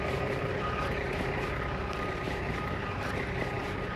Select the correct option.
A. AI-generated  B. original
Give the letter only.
A